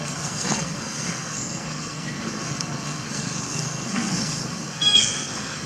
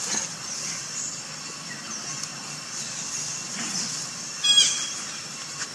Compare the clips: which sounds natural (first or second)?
second